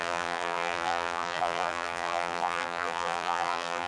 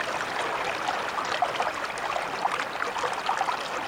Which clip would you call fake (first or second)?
first